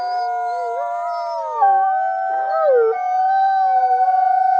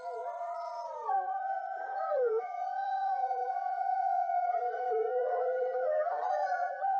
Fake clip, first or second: second